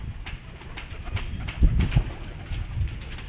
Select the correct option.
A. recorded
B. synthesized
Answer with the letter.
A